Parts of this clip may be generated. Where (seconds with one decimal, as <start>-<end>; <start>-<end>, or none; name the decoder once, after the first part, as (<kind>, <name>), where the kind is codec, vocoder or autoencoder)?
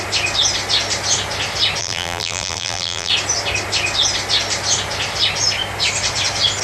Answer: 1.8-3.1 (vocoder, BigVGAN v2)